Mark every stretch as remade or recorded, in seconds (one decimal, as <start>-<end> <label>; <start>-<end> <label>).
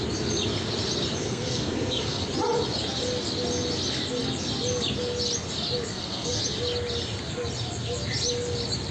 0.0-1.2 recorded; 1.2-2.3 remade; 2.3-5.9 recorded; 5.9-6.4 remade; 6.4-8.9 recorded